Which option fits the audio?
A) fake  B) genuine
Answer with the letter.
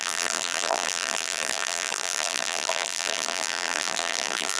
A